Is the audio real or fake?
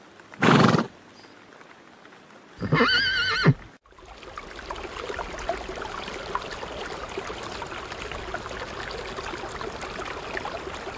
real